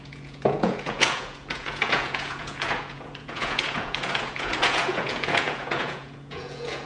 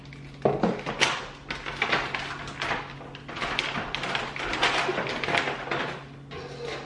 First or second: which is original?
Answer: second